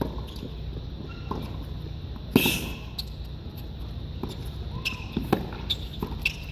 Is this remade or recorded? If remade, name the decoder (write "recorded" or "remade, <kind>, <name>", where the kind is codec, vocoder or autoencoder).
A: recorded